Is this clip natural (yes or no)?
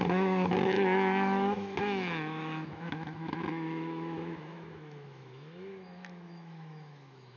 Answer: no